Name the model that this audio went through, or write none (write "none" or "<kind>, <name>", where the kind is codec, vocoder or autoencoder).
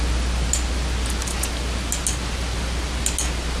none